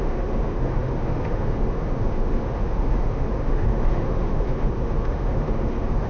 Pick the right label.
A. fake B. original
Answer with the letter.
A